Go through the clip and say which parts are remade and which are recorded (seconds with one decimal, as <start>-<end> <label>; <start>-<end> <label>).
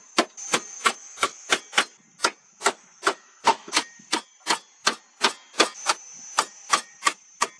0.0-1.0 recorded; 1.0-1.5 remade; 1.5-2.6 recorded; 2.6-3.8 remade; 3.8-7.6 recorded